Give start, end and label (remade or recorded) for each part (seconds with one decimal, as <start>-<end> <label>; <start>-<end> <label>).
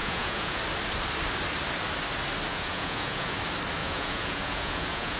0.0-0.6 remade; 0.6-2.5 recorded; 2.5-3.4 remade; 3.4-3.8 recorded; 3.8-5.2 remade